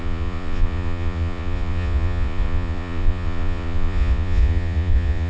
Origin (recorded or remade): remade